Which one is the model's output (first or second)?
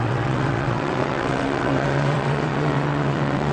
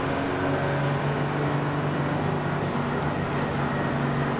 first